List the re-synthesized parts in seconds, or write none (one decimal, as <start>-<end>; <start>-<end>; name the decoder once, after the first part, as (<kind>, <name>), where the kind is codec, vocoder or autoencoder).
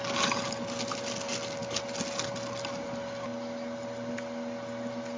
none